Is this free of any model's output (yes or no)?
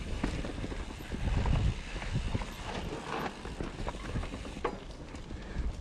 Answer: yes